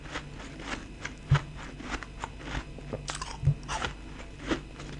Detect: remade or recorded recorded